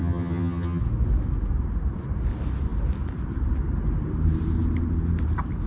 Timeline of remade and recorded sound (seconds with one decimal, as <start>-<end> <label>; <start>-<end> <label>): 0.0-0.8 remade; 0.8-5.7 recorded